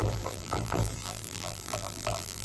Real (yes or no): no